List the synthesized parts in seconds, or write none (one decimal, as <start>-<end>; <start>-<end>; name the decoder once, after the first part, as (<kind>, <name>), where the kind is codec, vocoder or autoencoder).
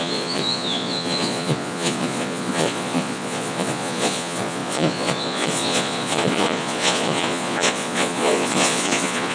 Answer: 0.0-9.3 (vocoder, Vocos)